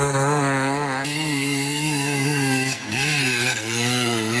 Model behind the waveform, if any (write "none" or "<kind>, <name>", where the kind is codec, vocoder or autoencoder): codec, SNAC